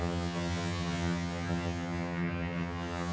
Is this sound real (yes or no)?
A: no